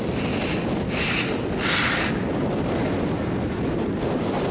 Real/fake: real